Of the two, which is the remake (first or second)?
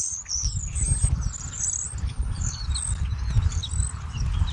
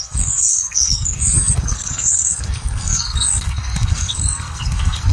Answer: second